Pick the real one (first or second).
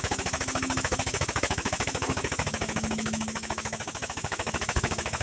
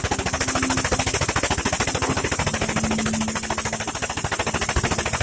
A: second